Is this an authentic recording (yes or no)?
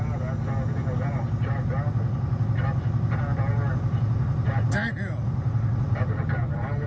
yes